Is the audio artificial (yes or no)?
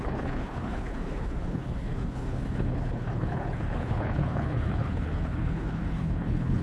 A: yes